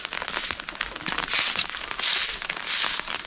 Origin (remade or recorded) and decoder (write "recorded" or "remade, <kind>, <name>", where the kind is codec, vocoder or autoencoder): recorded